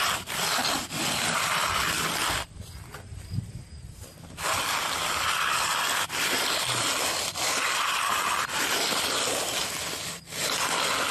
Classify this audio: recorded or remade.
recorded